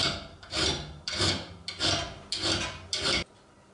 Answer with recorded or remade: recorded